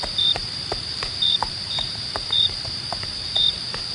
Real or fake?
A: fake